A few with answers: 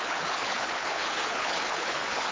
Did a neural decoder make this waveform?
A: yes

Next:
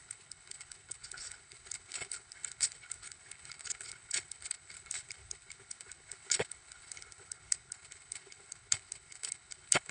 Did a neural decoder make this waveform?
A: yes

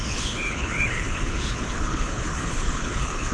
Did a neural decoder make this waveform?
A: yes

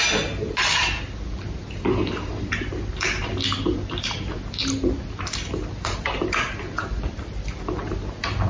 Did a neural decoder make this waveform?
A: no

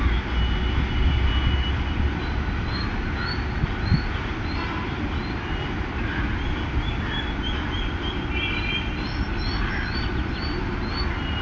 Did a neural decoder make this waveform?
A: no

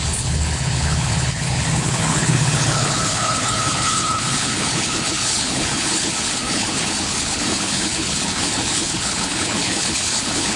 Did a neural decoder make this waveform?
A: yes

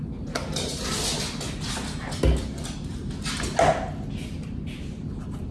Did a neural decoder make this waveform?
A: no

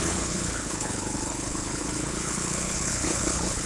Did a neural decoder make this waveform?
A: yes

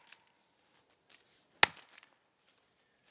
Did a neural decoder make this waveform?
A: no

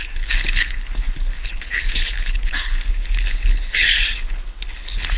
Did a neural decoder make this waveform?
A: yes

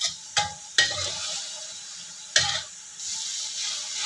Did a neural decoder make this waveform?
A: no